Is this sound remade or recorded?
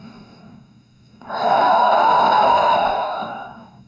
remade